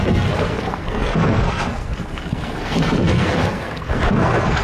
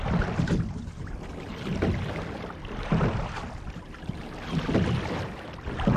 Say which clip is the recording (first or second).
second